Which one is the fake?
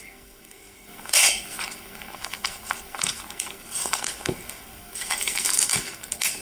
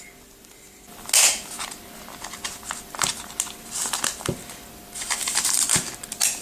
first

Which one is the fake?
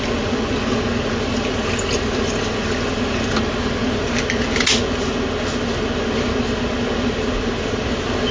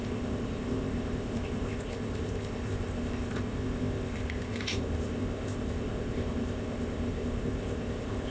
second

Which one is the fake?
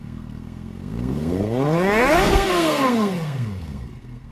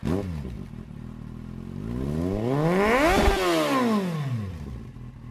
first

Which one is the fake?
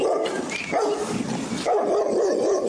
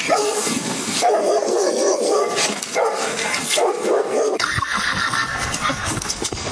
second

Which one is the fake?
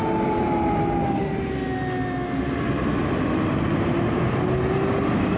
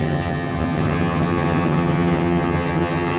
second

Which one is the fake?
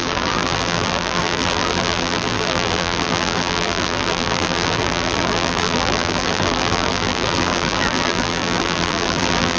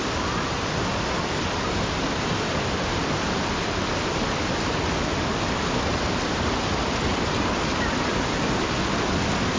first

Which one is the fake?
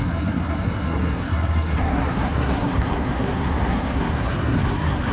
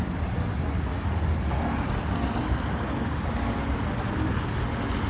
first